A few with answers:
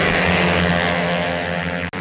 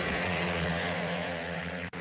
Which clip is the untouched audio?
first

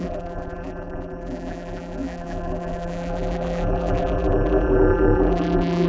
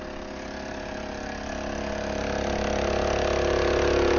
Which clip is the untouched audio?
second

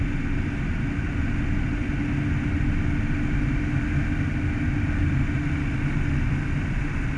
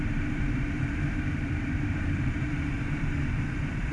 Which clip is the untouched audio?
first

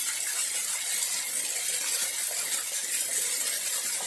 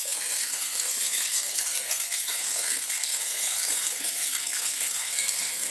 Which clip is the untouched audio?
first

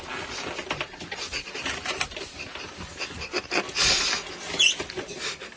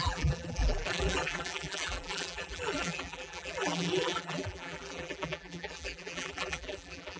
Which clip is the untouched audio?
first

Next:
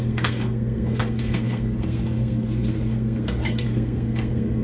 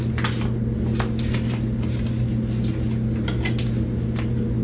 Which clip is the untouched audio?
second